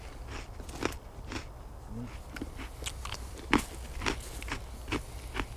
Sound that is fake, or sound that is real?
real